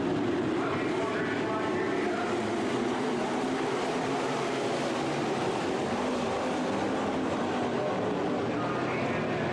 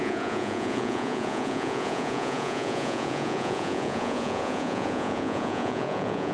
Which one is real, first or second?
first